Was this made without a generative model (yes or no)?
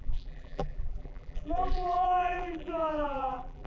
no